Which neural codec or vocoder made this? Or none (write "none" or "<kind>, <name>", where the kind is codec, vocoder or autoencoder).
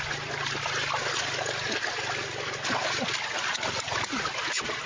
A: none